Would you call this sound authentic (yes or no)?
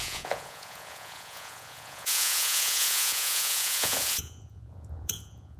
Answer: no